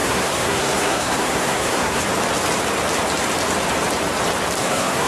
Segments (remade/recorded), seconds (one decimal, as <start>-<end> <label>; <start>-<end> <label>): 0.0-2.0 remade; 2.0-4.6 recorded; 4.6-5.1 remade